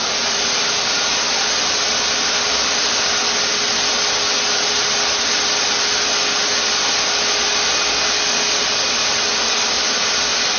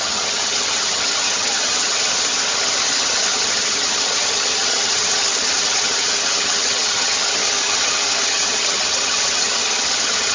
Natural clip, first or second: first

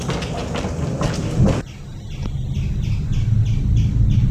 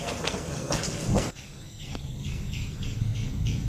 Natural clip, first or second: first